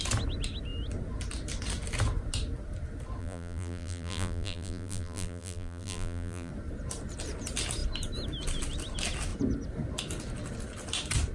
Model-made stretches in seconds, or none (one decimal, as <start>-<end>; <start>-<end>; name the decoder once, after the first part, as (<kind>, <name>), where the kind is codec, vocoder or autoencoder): 3.2-6.5 (vocoder, BigVGAN v2)